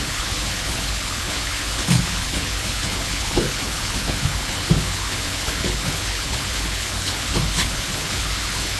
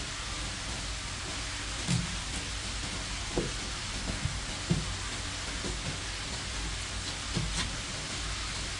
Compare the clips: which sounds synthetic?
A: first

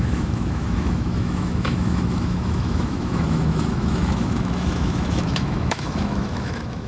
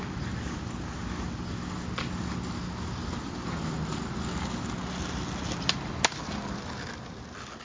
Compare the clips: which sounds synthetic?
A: first